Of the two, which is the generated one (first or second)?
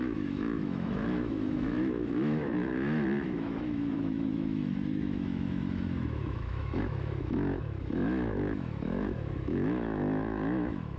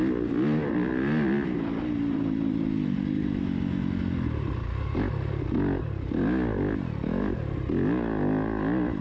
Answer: first